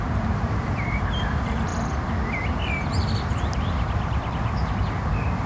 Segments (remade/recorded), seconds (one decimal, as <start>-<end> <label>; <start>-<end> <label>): 0.0-5.5 remade